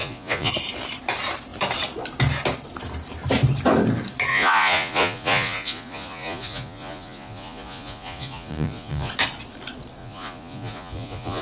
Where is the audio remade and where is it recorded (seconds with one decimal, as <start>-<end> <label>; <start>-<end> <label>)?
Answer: 0.0-0.5 remade; 0.5-4.3 recorded; 4.3-9.1 remade; 9.1-10.0 recorded; 10.0-11.4 remade